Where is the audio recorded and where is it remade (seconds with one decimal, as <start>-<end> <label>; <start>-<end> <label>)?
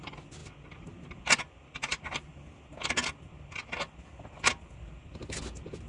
0.0-5.9 recorded